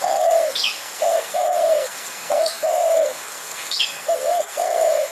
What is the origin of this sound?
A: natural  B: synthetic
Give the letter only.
B